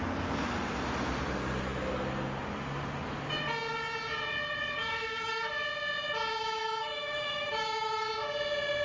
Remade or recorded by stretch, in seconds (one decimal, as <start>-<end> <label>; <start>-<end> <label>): 0.0-4.8 recorded; 4.8-5.5 remade; 5.5-6.4 recorded; 6.4-8.1 remade; 8.1-8.8 recorded